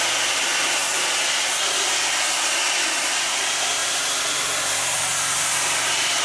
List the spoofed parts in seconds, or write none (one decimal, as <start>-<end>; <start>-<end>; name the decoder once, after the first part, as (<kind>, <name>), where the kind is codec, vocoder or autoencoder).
none